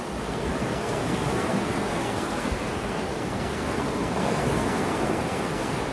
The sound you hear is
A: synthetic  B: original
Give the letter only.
A